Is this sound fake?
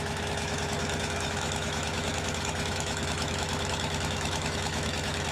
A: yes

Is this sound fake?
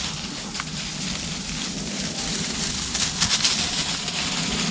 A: no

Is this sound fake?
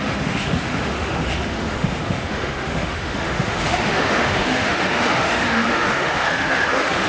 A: yes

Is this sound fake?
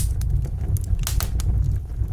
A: no